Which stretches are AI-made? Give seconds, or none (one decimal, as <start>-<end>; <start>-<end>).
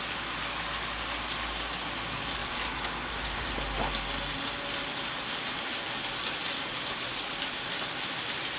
none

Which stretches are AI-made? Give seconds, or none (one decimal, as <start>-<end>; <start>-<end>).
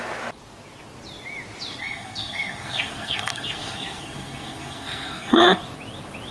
1.8-5.6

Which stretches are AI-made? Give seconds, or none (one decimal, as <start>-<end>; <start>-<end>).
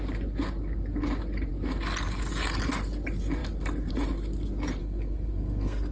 4.8-5.9